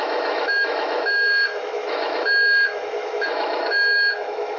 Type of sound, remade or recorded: remade